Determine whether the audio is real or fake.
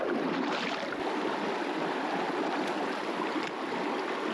real